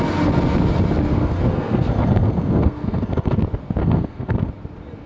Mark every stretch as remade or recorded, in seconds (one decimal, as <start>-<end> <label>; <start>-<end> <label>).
0.0-1.1 recorded; 1.1-3.4 remade; 3.4-3.8 recorded; 3.8-4.5 remade; 4.5-5.1 recorded

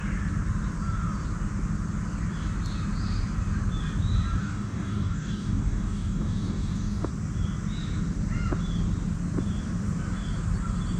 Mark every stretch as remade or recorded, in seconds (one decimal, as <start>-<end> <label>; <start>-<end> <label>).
0.0-4.4 recorded; 4.4-7.1 remade; 7.1-11.0 recorded

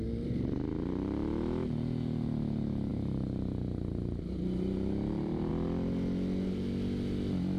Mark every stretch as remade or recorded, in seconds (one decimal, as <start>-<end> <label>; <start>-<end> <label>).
0.0-2.9 recorded; 2.9-5.5 remade; 5.5-7.6 recorded

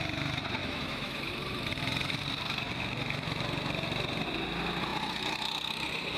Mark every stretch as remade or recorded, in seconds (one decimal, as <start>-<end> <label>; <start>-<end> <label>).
0.0-0.6 recorded; 0.6-1.3 remade; 1.3-6.2 recorded

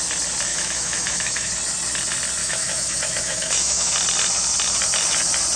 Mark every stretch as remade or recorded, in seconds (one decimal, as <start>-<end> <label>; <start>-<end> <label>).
0.0-0.5 recorded; 0.5-1.5 remade; 1.5-2.4 recorded; 2.4-3.9 remade; 3.9-5.6 recorded

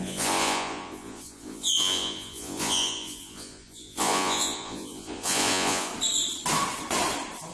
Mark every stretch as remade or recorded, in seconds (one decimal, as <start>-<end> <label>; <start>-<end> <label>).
0.0-5.9 remade; 5.9-7.5 recorded

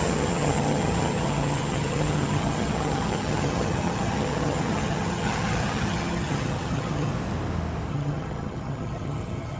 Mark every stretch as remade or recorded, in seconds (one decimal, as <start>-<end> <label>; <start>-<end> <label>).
0.0-7.1 remade; 7.1-7.9 recorded; 7.9-9.6 remade

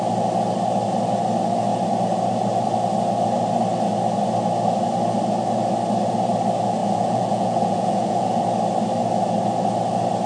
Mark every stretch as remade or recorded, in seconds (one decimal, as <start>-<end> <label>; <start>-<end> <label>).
0.0-6.8 recorded; 6.8-8.4 remade; 8.4-10.3 recorded